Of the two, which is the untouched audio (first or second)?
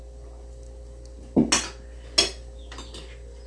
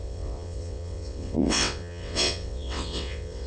first